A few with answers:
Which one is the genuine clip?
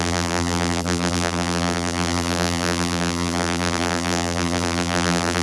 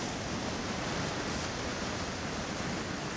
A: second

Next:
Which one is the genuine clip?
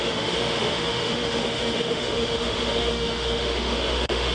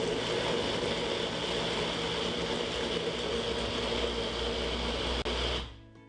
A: second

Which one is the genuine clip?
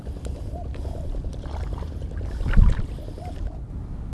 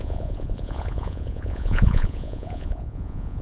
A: first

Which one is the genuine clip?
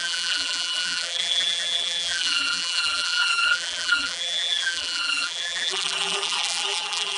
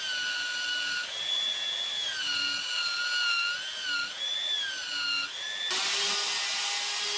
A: second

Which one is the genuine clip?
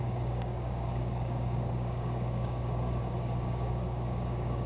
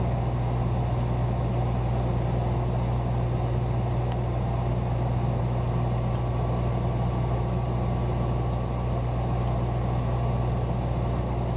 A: second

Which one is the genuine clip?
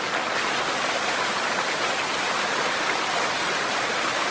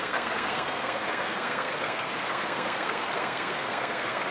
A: first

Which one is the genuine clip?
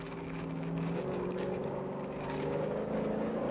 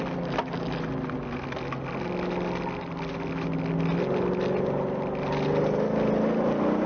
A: second